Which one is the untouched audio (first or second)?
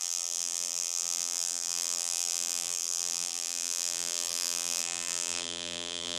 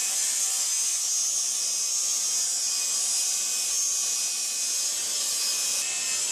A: second